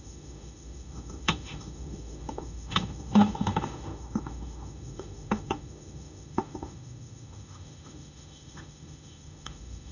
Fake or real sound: fake